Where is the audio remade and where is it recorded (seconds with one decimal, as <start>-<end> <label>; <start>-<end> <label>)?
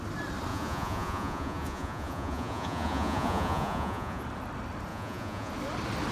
0.0-0.5 recorded; 0.5-4.2 remade; 4.2-4.9 recorded; 4.9-5.5 remade; 5.5-6.1 recorded